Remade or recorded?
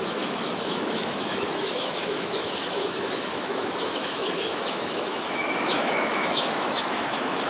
remade